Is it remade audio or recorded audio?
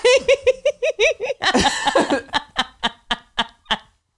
recorded